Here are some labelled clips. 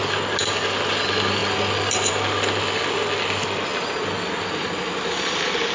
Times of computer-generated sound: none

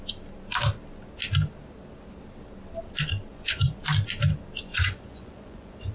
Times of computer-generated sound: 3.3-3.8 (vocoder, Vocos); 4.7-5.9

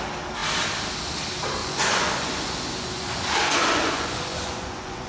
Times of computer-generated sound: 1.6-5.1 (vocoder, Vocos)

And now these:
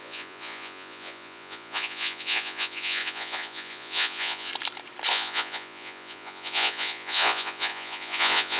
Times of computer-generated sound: 0.0-4.5 (vocoder, Vocos); 5.1-8.6

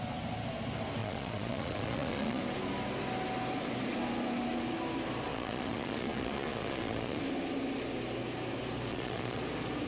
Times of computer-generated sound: 1.0-2.4 (vocoder, Vocos); 5.3-7.2; 8.9-9.4

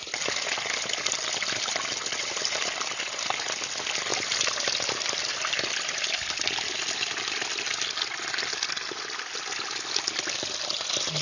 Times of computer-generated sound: none

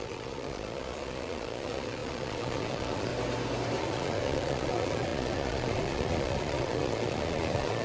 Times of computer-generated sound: 0.0-3.1 (vocoder, Vocos); 3.8-7.8

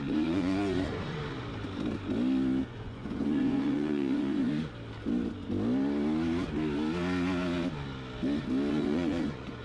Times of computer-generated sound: 0.0-1.2 (vocoder, Vocos); 2.6-4.4; 8.7-9.6